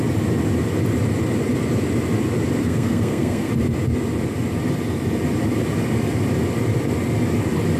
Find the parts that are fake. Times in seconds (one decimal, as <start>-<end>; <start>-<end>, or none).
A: 2.6-3.5